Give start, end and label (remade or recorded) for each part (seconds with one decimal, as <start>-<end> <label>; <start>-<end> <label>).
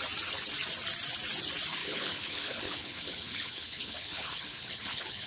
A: 0.0-1.8 recorded; 1.8-5.3 remade